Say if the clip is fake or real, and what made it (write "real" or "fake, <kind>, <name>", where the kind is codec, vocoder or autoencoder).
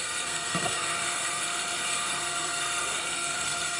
fake, codec, SNAC